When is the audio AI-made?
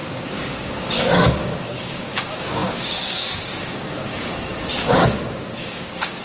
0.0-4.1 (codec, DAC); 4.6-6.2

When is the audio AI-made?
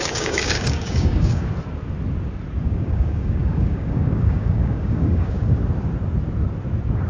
0.0-1.5 (codec, DAC); 2.6-5.6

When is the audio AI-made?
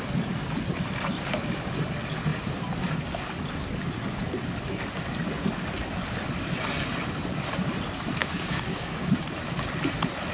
8.2-9.2 (codec, DAC)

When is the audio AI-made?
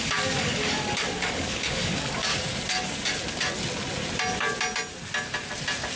0.0-2.3 (codec, DAC)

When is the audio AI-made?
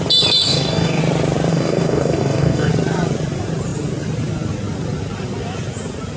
0.4-1.0 (codec, DAC); 1.5-2.7